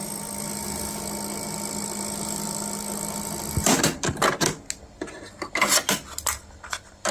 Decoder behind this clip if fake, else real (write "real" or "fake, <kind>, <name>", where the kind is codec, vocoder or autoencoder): real